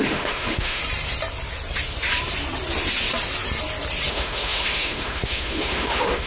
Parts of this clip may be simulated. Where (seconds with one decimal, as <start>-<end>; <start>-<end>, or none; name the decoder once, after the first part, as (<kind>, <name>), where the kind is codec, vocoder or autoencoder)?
0.0-0.8 (autoencoder, DAC-VAE); 4.1-6.3